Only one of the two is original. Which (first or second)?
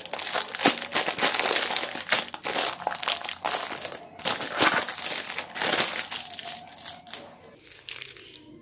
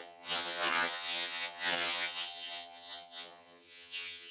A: first